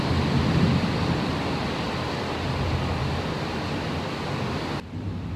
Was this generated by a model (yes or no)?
no